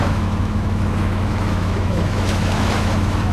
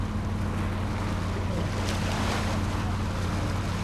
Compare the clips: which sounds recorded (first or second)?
second